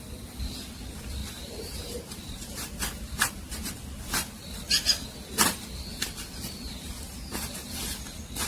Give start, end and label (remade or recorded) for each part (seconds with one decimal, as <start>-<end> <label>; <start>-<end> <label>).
0.0-1.2 recorded; 1.2-3.7 remade; 3.7-5.9 recorded; 5.9-7.4 remade; 7.4-8.5 recorded